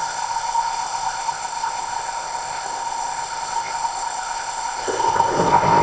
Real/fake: fake